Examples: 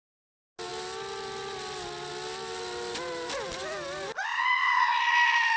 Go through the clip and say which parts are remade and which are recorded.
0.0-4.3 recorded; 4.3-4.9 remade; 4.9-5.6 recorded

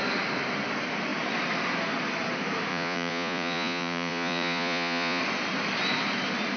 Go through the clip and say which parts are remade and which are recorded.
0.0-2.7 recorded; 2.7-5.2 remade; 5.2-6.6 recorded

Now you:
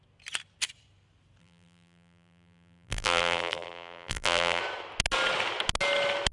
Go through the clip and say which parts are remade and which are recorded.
0.0-1.4 recorded; 1.4-4.6 remade; 4.6-6.3 recorded

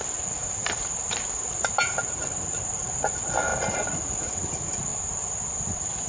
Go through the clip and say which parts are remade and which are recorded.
0.0-0.4 recorded; 0.4-2.6 remade; 2.6-6.1 recorded

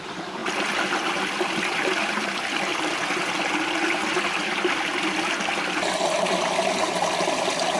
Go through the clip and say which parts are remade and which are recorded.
0.0-7.8 recorded